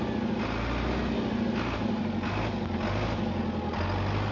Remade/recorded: recorded